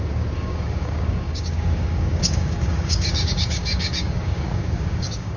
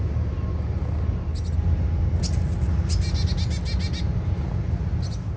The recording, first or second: second